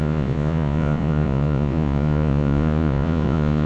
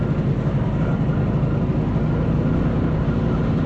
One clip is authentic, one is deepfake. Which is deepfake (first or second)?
first